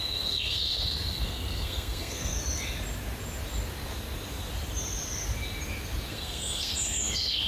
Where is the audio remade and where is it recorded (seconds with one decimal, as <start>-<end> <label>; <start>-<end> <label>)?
0.0-2.3 remade; 2.3-6.1 recorded; 6.1-7.5 remade